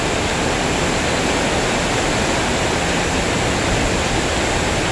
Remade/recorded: recorded